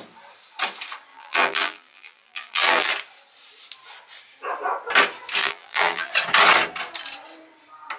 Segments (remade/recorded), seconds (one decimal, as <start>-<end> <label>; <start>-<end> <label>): 0.0-1.1 recorded; 1.1-2.9 remade; 2.9-5.4 recorded; 5.4-6.1 remade; 6.1-8.0 recorded